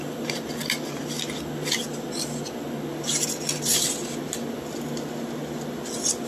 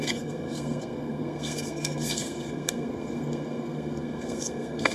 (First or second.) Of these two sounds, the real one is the first